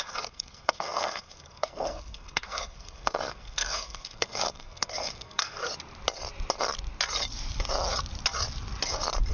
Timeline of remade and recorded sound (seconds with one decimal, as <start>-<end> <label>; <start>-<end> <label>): 0.0-5.6 remade; 5.6-9.3 recorded